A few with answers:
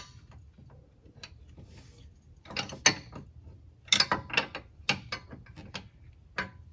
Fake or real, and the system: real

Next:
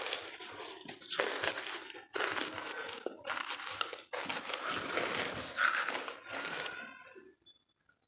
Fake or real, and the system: real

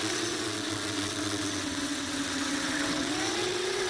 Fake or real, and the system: fake, vocoder, WaveNeXt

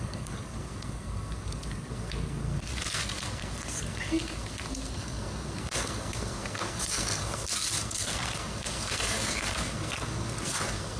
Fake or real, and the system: fake, codec, SNAC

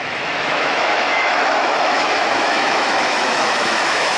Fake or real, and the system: fake, autoencoder, DAC-VAE